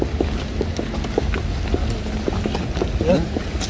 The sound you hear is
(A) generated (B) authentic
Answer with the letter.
B